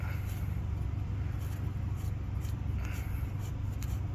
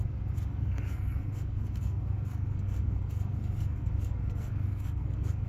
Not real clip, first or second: second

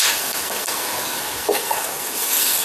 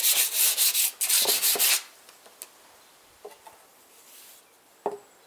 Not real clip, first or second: first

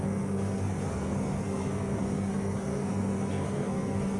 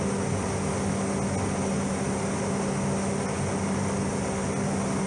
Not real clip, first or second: first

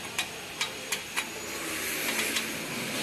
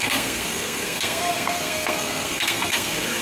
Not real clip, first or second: second